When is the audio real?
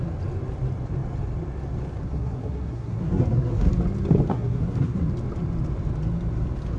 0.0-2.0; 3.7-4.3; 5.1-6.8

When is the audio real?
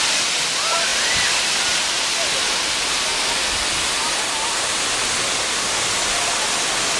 0.0-0.9; 1.4-3.1; 3.9-7.0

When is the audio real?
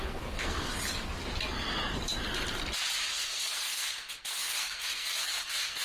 0.7-3.1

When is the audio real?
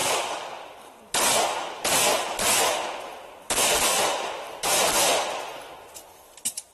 0.9-3.9; 4.7-6.7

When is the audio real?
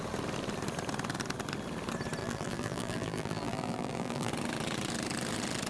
0.0-2.2; 4.3-5.7